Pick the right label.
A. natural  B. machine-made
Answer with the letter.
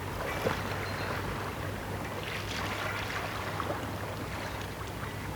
A